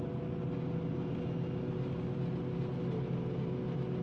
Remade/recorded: recorded